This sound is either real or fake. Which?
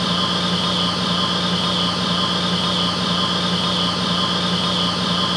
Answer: real